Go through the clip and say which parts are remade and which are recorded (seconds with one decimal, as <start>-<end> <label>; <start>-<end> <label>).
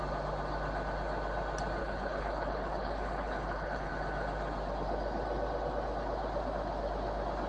0.0-1.8 recorded; 1.8-3.9 remade; 3.9-7.5 recorded